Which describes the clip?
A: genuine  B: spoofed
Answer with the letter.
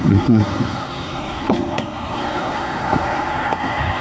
B